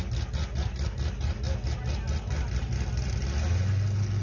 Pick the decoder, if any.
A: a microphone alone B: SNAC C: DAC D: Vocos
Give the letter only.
A